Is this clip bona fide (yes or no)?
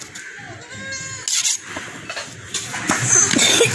yes